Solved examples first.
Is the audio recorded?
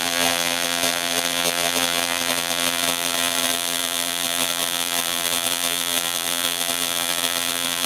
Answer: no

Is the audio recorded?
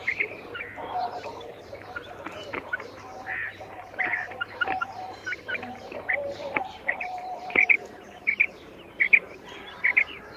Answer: no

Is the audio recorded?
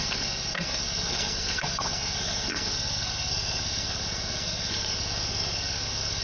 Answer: no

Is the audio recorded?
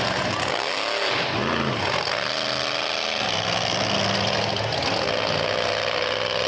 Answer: yes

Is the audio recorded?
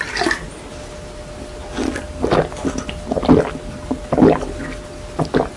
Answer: yes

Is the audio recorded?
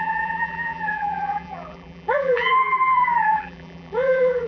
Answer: no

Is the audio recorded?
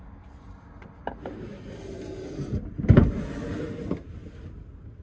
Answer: yes